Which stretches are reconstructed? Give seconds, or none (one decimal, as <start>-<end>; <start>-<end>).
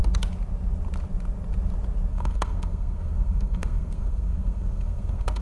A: 2.1-5.4